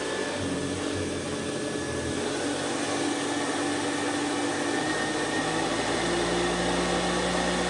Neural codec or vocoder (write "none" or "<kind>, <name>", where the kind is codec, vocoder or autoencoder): none